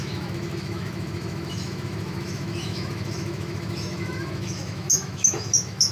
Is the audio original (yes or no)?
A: no